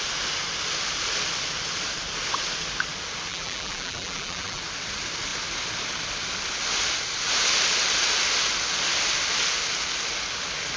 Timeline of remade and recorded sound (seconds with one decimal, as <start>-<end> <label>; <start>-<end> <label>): 0.0-3.3 recorded; 3.3-4.6 remade; 4.6-10.8 recorded